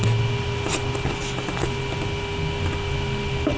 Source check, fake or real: real